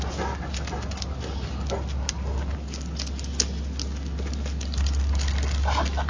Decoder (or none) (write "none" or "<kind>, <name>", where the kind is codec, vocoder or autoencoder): none